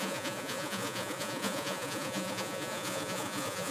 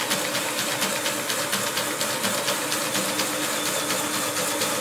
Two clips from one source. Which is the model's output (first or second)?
first